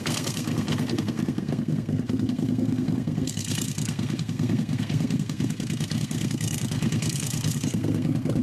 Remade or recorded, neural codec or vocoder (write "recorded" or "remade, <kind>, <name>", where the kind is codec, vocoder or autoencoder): remade, codec, SNAC